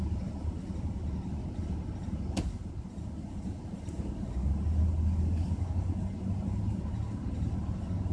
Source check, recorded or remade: recorded